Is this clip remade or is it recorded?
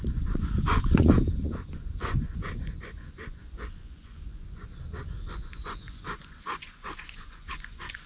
remade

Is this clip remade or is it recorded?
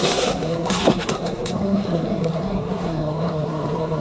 remade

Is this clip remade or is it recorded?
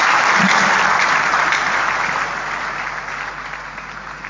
recorded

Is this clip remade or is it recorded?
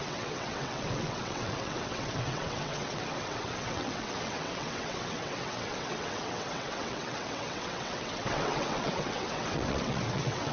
remade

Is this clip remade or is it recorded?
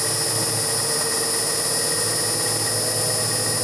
recorded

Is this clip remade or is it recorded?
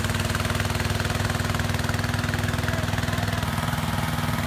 recorded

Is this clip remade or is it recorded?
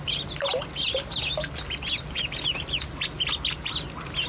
recorded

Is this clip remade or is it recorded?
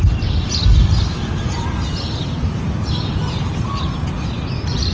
recorded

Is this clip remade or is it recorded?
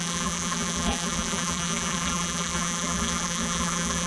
remade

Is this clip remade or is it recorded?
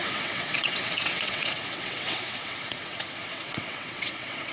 remade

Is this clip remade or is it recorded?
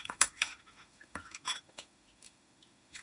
remade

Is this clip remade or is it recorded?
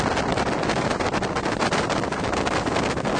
recorded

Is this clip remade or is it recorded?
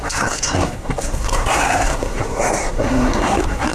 remade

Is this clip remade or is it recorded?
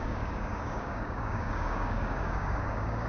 remade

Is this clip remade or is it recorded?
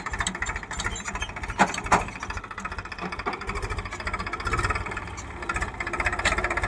recorded